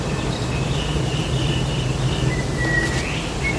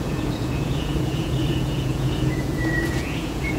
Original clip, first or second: first